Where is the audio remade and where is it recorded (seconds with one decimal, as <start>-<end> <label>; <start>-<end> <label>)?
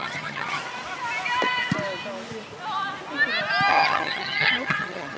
0.0-0.6 remade; 0.6-3.7 recorded; 3.7-5.2 remade